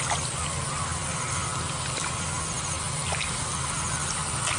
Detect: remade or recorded recorded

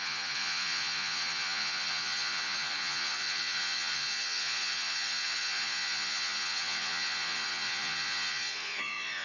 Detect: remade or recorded remade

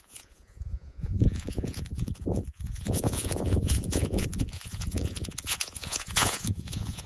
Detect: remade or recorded remade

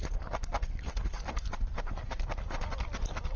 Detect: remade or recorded recorded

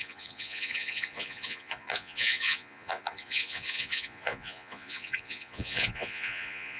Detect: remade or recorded remade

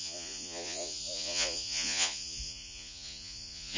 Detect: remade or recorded remade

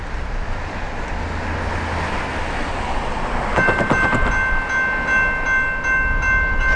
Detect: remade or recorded recorded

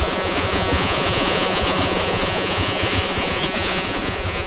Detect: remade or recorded remade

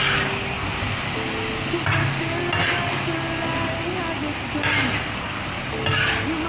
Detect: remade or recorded recorded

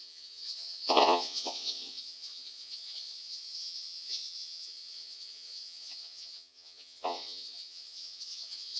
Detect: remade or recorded remade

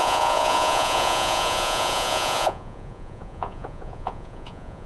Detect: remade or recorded remade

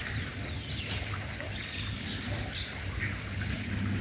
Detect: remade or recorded recorded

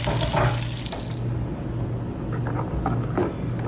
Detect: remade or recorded recorded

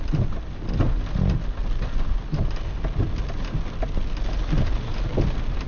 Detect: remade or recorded recorded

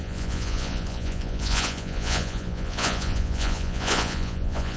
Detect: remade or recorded remade